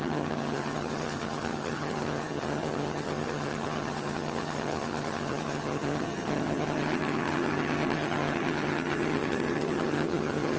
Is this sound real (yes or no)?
no